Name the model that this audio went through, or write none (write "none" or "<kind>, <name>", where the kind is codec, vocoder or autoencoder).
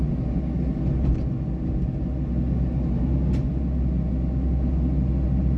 none